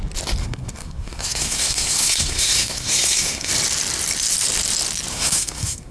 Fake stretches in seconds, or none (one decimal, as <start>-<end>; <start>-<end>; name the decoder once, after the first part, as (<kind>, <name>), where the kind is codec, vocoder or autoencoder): 0.4-3.5 (codec, SNAC); 5.1-5.9